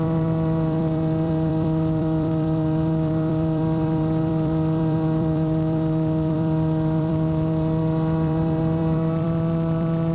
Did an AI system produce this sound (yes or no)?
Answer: yes